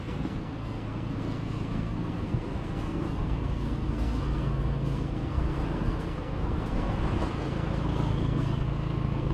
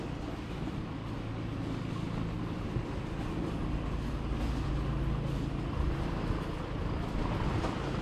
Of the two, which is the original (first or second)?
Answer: second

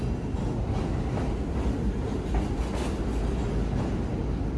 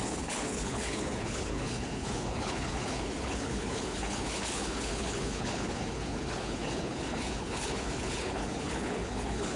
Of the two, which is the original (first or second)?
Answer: first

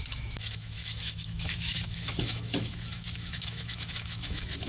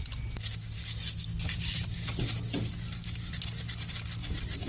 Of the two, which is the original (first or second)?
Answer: second